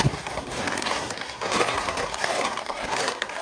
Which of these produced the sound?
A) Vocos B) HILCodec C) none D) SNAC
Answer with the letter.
D